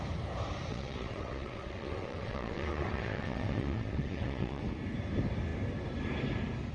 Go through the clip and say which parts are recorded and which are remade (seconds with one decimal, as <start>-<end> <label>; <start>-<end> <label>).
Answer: 0.0-0.7 recorded; 0.7-4.6 remade; 4.6-6.7 recorded